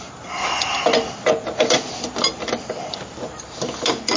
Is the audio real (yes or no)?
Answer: yes